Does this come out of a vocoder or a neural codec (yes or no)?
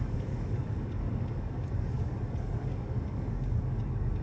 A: yes